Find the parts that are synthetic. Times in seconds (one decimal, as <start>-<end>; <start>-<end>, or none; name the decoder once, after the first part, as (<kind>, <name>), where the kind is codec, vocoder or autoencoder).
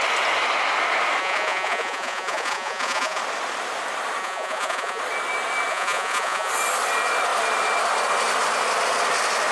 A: 1.2-3.2 (vocoder, Vocos); 4.2-5.0; 5.7-6.5